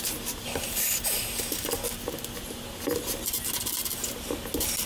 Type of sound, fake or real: real